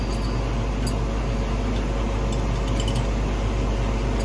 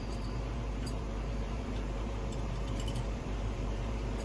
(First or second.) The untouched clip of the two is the first